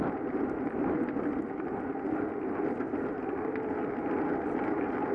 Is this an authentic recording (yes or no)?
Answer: yes